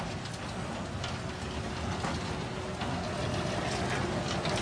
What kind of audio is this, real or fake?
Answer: real